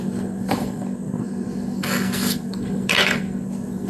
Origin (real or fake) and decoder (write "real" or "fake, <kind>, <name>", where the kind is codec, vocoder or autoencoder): fake, codec, SNAC